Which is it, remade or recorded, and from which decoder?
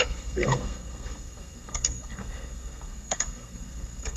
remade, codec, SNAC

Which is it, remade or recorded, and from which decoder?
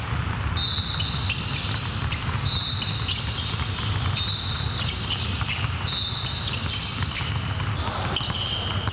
recorded